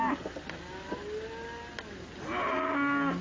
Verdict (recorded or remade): recorded